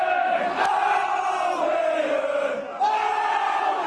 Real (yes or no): yes